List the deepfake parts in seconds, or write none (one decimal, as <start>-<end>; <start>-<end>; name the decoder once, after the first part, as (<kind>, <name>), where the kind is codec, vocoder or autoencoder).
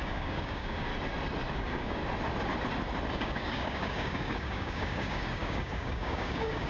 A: 0.0-0.9 (codec, DAC); 1.5-2.0; 3.1-6.7